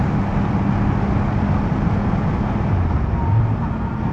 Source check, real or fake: real